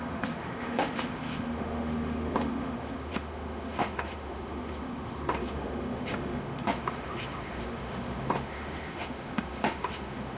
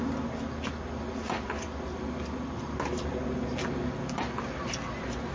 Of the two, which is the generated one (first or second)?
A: first